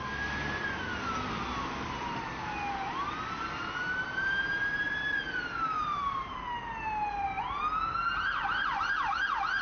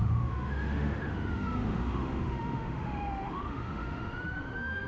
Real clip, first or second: first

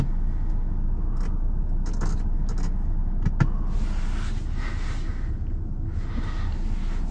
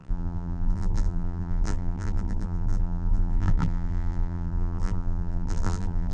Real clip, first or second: first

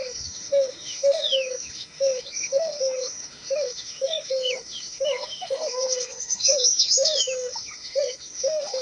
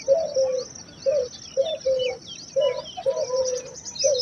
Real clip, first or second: second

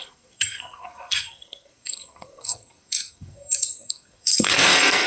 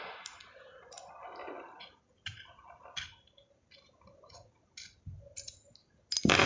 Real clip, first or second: second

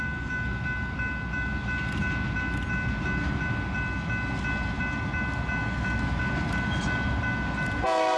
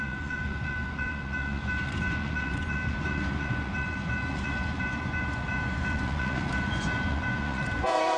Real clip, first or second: first